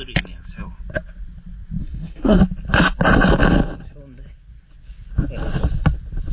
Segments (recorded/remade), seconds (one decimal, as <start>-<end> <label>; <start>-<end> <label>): 0.0-1.8 recorded; 1.8-2.4 remade; 2.4-6.3 recorded